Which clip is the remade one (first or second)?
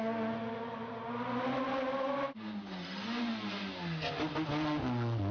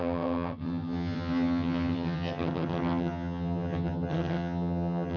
second